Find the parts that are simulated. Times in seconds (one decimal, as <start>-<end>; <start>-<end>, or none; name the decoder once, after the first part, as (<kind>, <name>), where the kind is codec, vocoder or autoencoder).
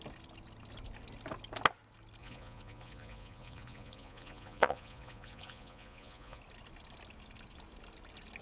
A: 2.2-6.4 (vocoder, Vocos)